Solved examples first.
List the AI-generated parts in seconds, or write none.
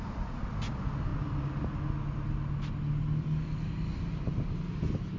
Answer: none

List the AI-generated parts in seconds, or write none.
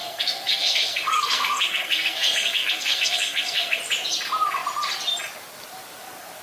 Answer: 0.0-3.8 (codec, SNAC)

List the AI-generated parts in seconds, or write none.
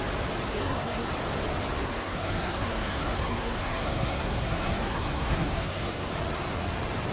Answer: 0.5-1.1 (codec, SNAC); 1.8-6.1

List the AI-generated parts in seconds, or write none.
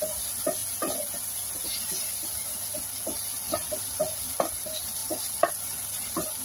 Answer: none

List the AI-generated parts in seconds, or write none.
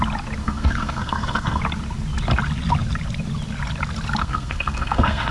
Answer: 0.4-1.6 (codec, SNAC); 4.2-5.3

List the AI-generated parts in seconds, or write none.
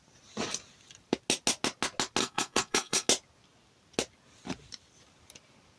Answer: 2.2-3.1 (codec, SNAC)